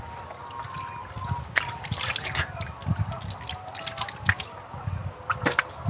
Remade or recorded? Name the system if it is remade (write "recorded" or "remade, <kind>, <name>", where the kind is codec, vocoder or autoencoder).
recorded